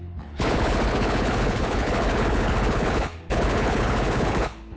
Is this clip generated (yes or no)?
yes